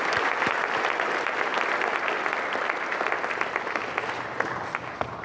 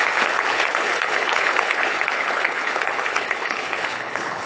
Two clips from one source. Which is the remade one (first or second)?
second